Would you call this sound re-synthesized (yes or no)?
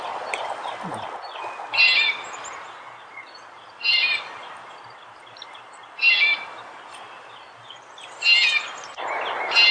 no